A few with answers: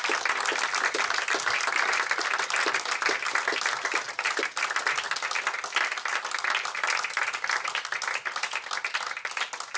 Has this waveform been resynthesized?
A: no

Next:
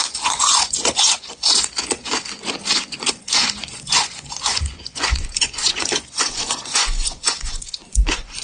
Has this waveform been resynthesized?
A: yes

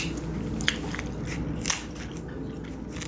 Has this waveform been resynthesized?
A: no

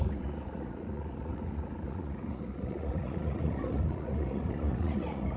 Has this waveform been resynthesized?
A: yes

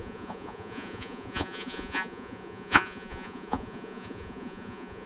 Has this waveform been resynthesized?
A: yes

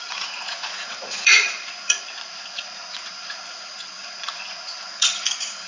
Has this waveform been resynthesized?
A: yes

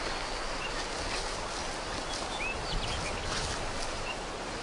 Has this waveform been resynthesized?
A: no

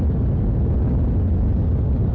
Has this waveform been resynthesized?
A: no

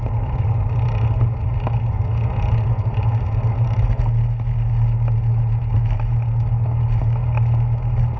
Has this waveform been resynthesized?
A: no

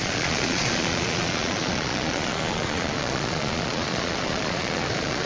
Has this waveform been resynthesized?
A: yes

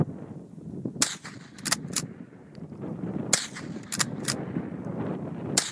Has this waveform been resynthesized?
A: no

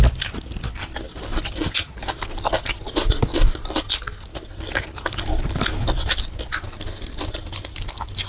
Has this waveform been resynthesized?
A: no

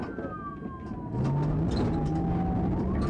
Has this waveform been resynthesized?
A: no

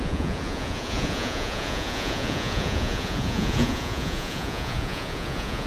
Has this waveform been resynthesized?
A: yes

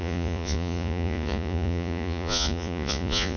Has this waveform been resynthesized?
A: yes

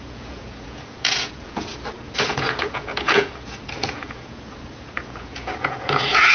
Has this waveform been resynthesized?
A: yes